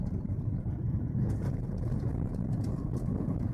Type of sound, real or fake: fake